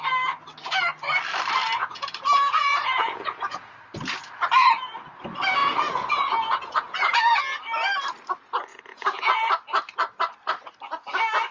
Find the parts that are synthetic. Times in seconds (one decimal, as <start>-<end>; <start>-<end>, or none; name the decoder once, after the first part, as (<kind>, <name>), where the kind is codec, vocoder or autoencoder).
1.8-3.7 (vocoder, Vocos); 5.6-7.4; 8.7-9.5